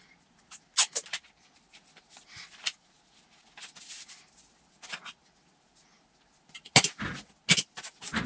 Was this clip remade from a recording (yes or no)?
no